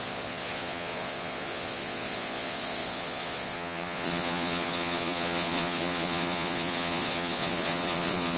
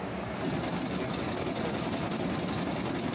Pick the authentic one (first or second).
second